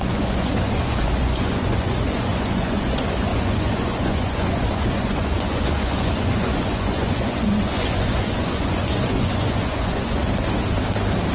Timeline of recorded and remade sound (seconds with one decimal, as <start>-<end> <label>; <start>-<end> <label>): 0.0-10.2 remade; 10.2-11.3 recorded